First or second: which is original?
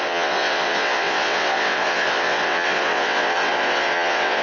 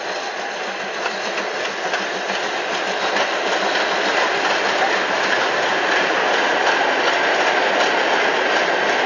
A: second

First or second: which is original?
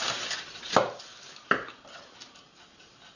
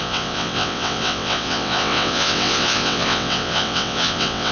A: first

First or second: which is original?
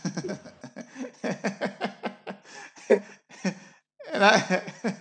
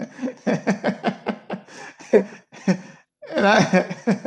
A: first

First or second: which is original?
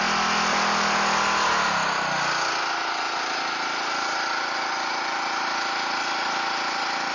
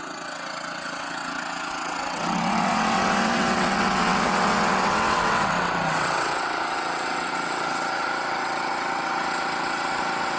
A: first